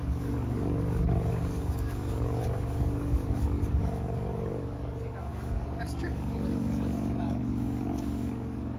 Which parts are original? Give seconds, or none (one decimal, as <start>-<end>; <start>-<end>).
none